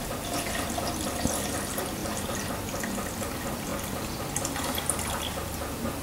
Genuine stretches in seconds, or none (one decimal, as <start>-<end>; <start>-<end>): 0.0-6.0